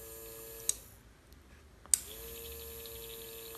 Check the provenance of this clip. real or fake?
real